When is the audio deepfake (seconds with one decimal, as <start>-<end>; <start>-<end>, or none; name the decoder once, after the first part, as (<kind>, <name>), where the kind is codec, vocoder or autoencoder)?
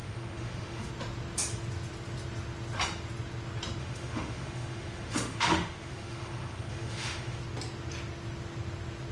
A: 0.0-0.9 (autoencoder, DAC-VAE); 3.8-7.4